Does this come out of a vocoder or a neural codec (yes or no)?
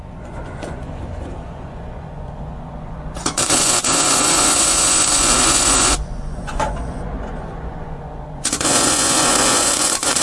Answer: yes